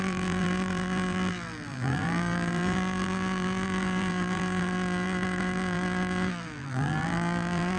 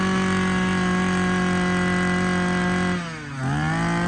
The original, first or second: second